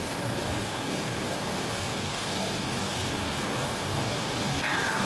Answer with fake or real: fake